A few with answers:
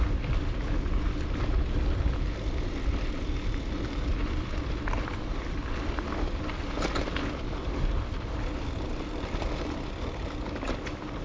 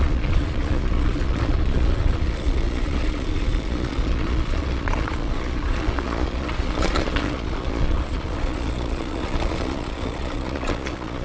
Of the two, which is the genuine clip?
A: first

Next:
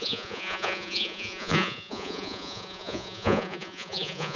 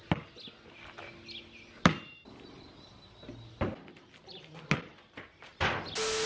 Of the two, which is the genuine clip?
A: second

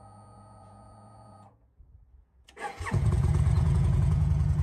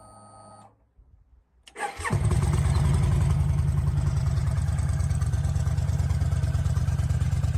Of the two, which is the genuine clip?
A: second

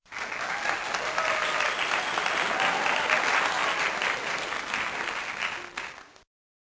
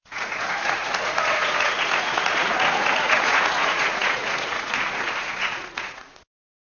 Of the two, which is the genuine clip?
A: first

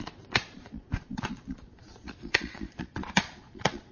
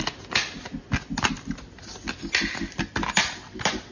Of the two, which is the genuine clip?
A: second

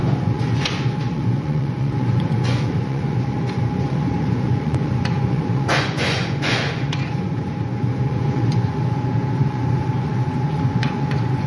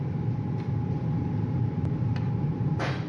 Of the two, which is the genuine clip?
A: second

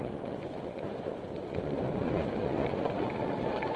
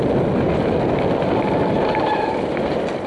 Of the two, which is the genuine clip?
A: second